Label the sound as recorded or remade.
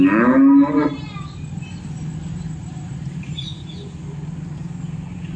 recorded